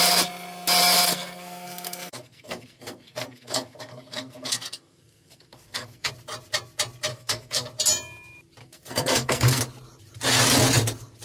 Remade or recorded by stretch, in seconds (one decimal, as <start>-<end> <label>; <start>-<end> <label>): 0.0-1.1 recorded; 1.1-6.1 remade; 6.1-7.1 recorded; 7.1-7.7 remade; 7.7-8.6 recorded; 8.6-9.6 remade; 9.6-11.2 recorded